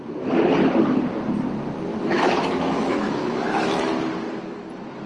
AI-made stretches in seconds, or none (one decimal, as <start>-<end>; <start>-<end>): 1.9-3.9